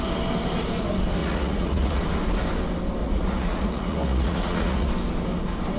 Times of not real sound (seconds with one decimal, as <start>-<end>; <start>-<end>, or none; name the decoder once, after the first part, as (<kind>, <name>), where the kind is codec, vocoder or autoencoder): 1.2-2.0 (vocoder, Vocos); 3.0-4.9